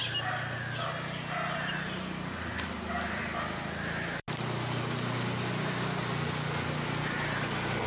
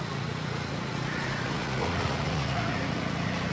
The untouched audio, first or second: first